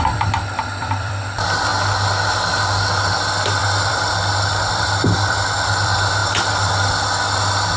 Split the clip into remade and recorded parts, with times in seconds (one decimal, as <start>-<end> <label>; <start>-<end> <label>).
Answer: 0.0-1.7 remade; 1.7-3.1 recorded; 3.1-7.8 remade